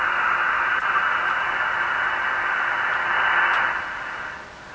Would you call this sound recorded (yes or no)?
yes